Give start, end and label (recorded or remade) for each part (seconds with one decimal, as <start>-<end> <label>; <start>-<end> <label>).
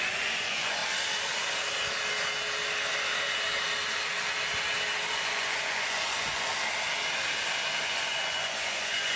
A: 0.0-0.8 remade; 0.8-5.1 recorded; 5.1-6.5 remade; 6.5-7.8 recorded; 7.8-9.2 remade